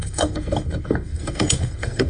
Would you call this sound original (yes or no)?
no